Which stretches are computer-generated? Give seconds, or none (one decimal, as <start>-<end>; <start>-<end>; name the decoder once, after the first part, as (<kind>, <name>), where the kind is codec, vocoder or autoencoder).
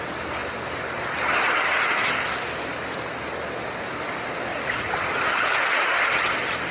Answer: 4.5-5.2 (vocoder, Vocos)